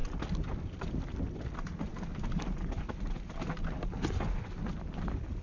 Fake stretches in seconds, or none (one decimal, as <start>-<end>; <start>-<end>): none